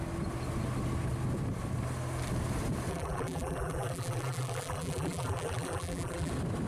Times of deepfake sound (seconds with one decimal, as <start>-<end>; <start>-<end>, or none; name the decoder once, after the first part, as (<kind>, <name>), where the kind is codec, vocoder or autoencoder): 2.9-6.3 (vocoder, BigVGAN v2)